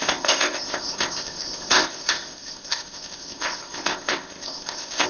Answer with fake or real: fake